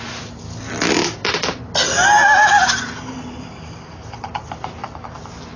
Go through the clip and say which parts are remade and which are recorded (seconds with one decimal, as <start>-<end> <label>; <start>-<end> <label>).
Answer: 0.0-5.6 recorded